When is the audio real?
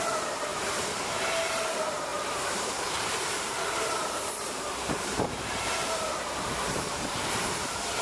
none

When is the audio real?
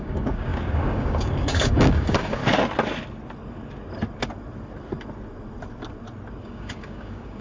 2.4-6.4